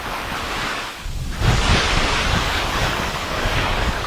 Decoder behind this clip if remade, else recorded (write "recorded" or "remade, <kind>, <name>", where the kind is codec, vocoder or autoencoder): remade, codec, DAC